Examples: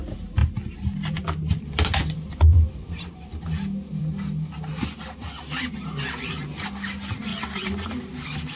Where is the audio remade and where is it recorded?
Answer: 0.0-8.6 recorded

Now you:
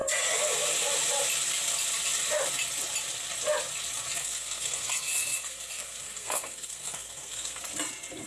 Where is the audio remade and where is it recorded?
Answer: 0.0-4.2 recorded; 4.2-7.6 remade; 7.6-8.3 recorded